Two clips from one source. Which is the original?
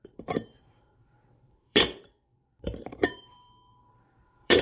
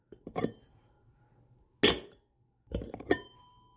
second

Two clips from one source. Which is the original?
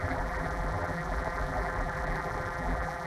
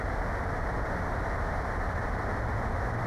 second